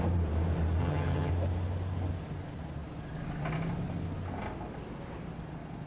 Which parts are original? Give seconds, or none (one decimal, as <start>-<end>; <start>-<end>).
0.0-0.8; 1.3-5.9